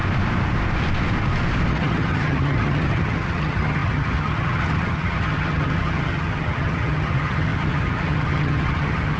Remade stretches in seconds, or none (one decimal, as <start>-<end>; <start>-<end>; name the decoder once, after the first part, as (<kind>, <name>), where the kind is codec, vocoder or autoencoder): 1.7-9.2 (vocoder, HiFi-GAN)